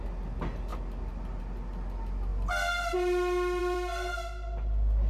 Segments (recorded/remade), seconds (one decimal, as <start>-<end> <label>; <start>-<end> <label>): 0.0-5.1 recorded